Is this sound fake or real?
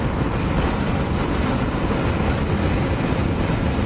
real